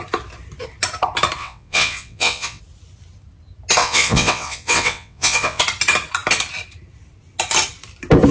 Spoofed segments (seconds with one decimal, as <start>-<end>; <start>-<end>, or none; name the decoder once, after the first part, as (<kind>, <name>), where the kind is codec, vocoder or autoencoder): 1.4-2.6 (vocoder, WaveNeXt); 3.8-5.6